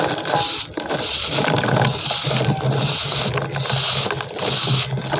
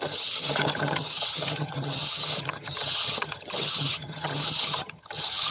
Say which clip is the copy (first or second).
second